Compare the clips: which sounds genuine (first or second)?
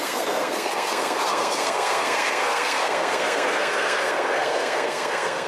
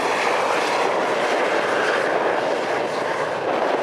second